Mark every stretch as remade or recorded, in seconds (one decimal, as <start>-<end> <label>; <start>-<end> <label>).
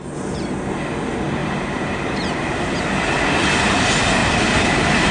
0.0-1.4 recorded; 1.4-2.8 remade; 2.8-4.2 recorded; 4.2-5.1 remade